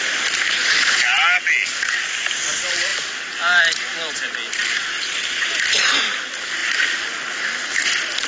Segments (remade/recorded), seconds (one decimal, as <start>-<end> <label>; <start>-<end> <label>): 0.0-8.3 recorded